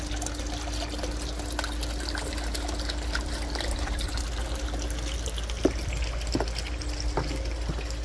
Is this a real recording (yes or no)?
yes